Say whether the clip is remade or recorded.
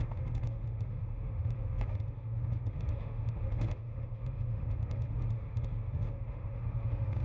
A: remade